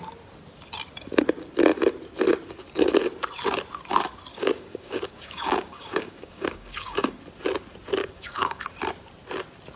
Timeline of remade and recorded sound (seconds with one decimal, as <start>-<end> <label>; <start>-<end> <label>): 0.0-4.3 recorded; 4.3-7.1 remade; 7.1-8.0 recorded; 8.0-8.6 remade; 8.6-9.8 recorded